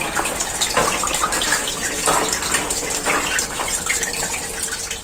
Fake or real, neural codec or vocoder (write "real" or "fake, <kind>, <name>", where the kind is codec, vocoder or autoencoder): real